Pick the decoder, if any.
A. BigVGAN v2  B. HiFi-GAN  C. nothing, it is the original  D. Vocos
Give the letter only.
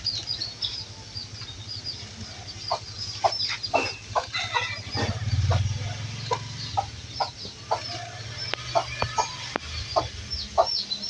C